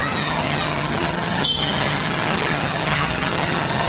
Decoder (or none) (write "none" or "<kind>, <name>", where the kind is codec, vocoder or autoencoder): vocoder, HiFi-GAN